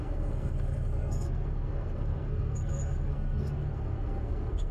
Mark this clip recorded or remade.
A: remade